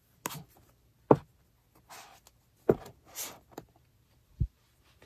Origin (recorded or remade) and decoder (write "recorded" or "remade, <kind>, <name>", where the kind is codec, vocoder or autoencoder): recorded